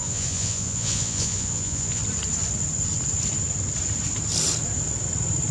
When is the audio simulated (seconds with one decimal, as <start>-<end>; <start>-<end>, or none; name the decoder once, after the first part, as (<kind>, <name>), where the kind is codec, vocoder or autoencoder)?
0.0-2.0 (vocoder, Vocos)